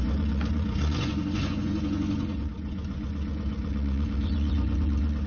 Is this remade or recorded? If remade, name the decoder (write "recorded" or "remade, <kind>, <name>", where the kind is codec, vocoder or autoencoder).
remade, vocoder, Vocos